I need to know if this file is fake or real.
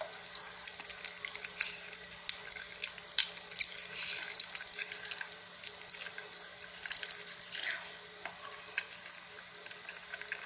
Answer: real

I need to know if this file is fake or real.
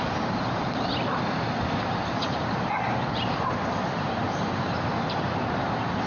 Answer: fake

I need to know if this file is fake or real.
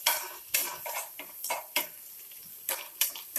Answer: fake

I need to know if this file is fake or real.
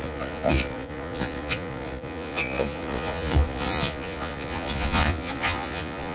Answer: fake